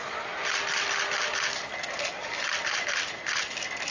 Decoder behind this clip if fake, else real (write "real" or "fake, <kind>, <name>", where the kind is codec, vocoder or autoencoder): real